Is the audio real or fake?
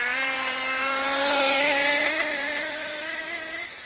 fake